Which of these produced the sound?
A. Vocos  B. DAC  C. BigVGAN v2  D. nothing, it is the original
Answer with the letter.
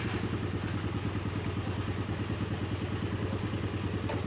D